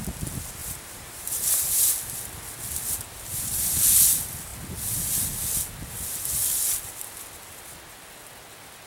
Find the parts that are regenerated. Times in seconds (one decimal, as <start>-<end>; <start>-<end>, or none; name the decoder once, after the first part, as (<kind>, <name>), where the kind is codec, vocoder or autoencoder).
0.6-1.9 (vocoder, BigVGAN v2)